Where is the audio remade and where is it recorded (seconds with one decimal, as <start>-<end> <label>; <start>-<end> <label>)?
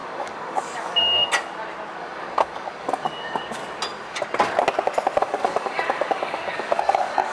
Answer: 0.0-1.3 remade; 1.3-2.0 recorded; 2.0-3.6 remade; 3.6-5.2 recorded; 5.2-7.3 remade